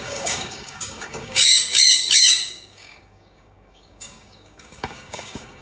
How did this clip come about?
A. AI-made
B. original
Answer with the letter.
A